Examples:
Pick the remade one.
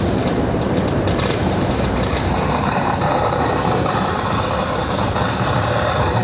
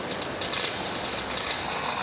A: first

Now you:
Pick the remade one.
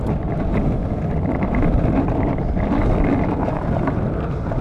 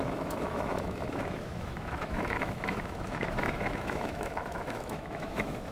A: second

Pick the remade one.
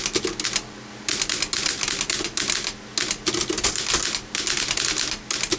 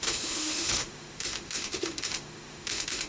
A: second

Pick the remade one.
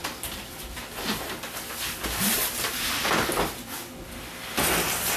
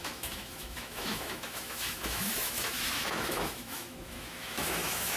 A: second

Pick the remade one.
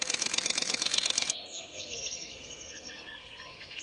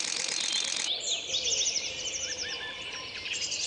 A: first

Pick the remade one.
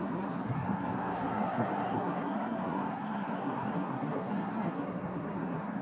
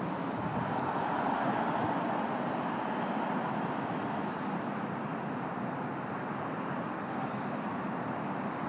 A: first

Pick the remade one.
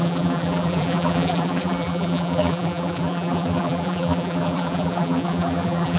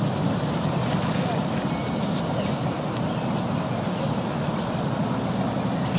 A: first